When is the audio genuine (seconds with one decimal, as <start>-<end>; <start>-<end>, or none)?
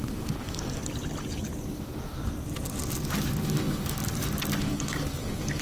0.8-1.7; 2.2-3.4; 4.0-4.6